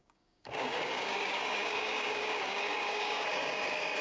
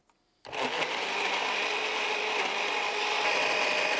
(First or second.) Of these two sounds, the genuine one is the second